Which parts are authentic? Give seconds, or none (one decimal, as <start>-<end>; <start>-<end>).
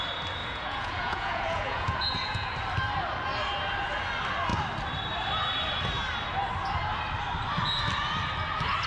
0.0-0.4; 2.5-8.9